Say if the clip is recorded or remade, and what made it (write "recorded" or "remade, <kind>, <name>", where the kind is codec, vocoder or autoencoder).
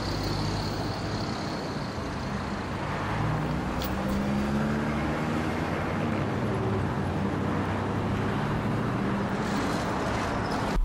recorded